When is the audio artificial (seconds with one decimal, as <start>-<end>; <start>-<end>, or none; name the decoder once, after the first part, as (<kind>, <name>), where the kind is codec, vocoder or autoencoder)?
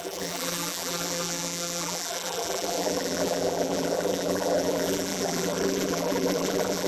0.0-6.9 (vocoder, BigVGAN v2)